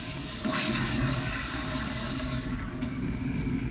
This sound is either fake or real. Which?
fake